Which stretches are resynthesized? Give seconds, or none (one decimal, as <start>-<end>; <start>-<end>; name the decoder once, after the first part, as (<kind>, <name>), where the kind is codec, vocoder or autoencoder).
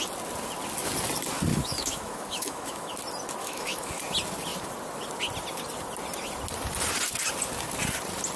1.5-3.0 (autoencoder, DAC-VAE); 3.4-4.0